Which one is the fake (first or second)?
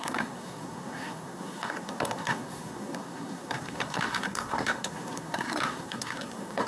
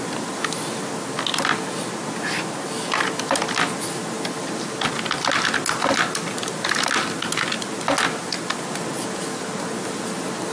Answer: first